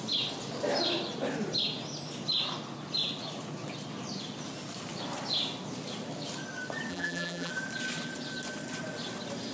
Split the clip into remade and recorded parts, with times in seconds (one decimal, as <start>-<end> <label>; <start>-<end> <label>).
0.0-6.9 recorded; 6.9-7.5 remade; 7.5-9.5 recorded

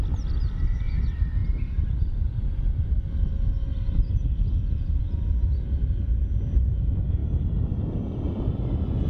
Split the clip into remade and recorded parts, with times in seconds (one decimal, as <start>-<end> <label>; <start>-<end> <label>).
0.0-1.4 recorded; 1.4-3.0 remade; 3.0-3.7 recorded; 3.7-5.0 remade; 5.0-9.1 recorded

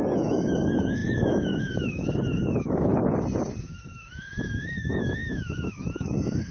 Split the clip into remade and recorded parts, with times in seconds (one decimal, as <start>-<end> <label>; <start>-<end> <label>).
0.0-2.9 remade; 2.9-3.6 recorded; 3.6-6.5 remade

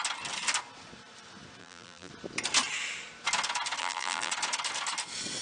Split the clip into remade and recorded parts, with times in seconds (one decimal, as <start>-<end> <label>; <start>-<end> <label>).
0.0-1.6 recorded; 1.6-2.1 remade; 2.1-3.8 recorded; 3.8-4.3 remade; 4.3-5.4 recorded